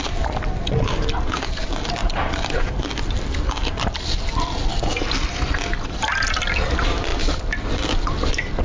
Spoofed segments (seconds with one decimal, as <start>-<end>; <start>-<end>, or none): none